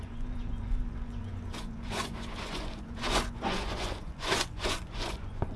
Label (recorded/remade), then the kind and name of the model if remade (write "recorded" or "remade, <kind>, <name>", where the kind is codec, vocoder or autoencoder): remade, vocoder, Vocos